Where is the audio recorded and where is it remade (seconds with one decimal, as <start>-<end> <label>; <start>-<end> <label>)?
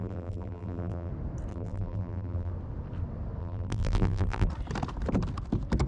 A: 0.0-1.1 remade; 1.1-1.5 recorded; 1.5-2.5 remade; 2.5-3.4 recorded; 3.4-4.5 remade; 4.5-5.9 recorded